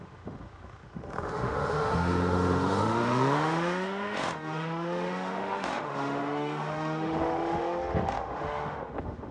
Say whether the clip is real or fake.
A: fake